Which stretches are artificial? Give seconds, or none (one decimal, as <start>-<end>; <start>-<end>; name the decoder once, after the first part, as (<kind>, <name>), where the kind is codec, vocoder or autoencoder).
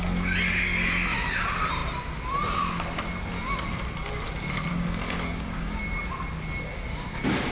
4.7-5.8 (codec, DAC); 6.7-7.5